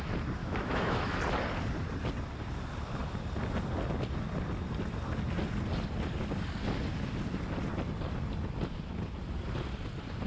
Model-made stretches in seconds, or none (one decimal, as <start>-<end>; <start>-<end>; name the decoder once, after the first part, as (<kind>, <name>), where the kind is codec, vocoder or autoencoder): 0.4-1.2 (autoencoder, DAC-VAE)